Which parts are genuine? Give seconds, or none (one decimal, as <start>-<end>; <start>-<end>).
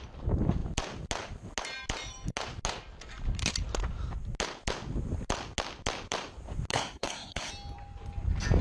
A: 0.0-6.7; 7.5-8.6